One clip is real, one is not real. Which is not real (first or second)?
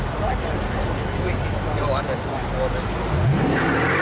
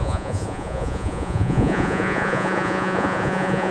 second